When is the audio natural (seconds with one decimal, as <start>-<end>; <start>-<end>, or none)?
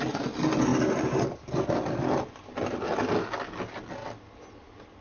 0.0-5.0